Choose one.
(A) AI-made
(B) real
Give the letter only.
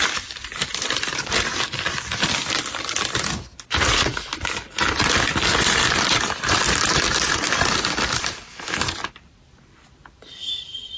A